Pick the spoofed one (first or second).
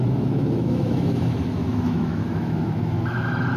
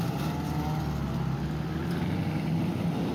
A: first